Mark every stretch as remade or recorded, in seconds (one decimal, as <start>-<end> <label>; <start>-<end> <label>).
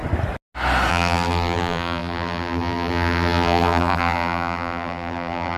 0.0-0.9 recorded; 0.9-5.6 remade